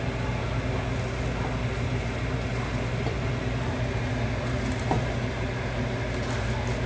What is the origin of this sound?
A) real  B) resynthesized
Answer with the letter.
A